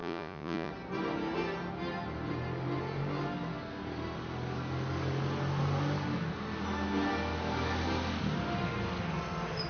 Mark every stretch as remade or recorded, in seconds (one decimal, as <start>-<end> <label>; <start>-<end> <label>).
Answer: 0.0-0.7 remade; 0.7-9.7 recorded